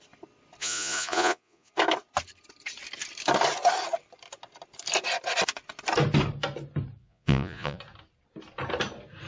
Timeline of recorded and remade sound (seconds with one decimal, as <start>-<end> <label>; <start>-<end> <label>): 0.0-0.6 recorded; 0.6-1.7 remade; 1.7-7.0 recorded; 7.0-7.8 remade; 7.8-9.3 recorded